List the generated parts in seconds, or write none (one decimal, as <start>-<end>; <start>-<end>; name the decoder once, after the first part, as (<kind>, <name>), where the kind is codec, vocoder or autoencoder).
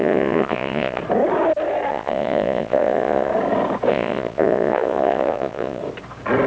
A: 0.0-1.0 (vocoder, Vocos); 1.9-3.3; 3.9-5.8